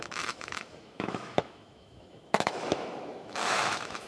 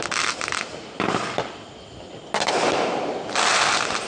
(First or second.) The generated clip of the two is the first